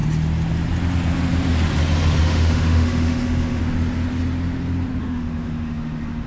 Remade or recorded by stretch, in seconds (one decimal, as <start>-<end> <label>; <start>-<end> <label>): 0.0-2.2 recorded; 2.2-3.6 remade; 3.6-5.0 recorded; 5.0-6.3 remade